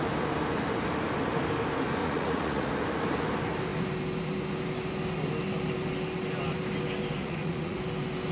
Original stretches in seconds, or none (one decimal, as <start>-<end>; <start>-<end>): 0.0-2.0; 2.7-7.2; 7.8-8.3